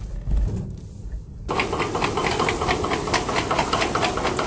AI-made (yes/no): no